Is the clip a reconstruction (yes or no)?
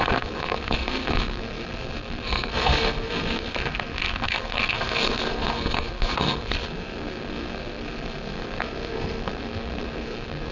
yes